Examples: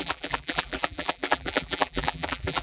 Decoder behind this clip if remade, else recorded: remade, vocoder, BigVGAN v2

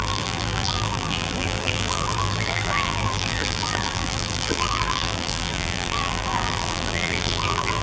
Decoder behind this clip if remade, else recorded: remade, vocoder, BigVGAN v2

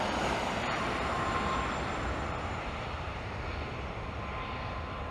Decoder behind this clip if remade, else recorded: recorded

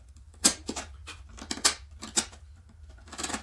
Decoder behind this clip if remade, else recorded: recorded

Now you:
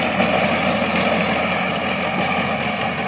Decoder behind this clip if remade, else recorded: recorded